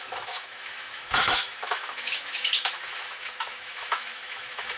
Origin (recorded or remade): remade